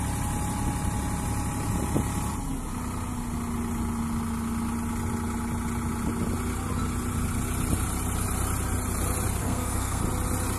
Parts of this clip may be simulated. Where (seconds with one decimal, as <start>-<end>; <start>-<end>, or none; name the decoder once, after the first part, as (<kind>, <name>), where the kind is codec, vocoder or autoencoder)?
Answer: 9.4-10.0 (codec, SNAC)